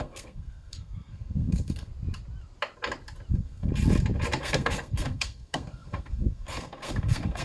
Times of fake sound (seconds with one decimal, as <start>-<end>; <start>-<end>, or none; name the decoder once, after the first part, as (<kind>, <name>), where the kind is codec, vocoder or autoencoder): 0.0-1.9 (codec, SNAC); 3.3-3.7; 4.4-7.4